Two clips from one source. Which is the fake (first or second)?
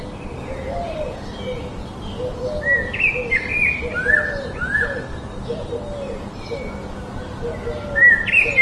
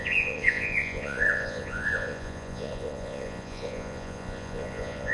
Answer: second